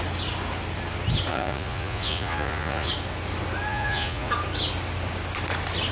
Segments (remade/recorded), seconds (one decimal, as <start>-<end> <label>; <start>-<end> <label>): 0.0-1.3 recorded; 1.3-2.9 remade; 2.9-3.7 recorded; 3.7-4.3 remade; 4.3-5.9 recorded